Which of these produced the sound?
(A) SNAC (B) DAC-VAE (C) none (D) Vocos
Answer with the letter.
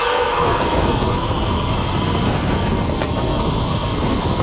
A